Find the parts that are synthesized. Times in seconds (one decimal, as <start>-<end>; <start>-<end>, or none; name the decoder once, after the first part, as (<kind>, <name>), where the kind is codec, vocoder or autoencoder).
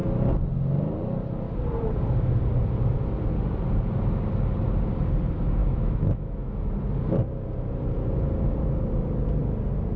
5.6-6.7 (autoencoder, DAC-VAE)